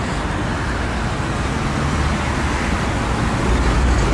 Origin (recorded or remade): recorded